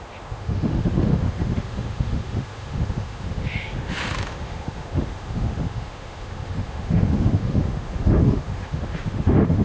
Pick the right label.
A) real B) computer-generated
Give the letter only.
B